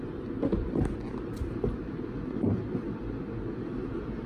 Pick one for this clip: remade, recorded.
recorded